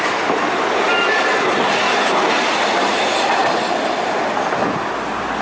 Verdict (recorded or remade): recorded